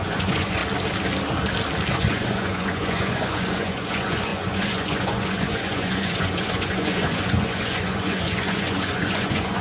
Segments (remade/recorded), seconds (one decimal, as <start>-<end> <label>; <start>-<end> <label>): 0.0-0.6 remade; 0.6-1.9 recorded; 1.9-9.6 remade